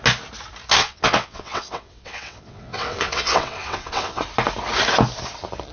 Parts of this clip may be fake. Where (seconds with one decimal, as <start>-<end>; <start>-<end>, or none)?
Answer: 0.8-4.2